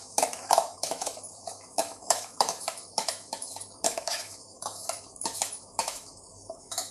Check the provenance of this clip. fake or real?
fake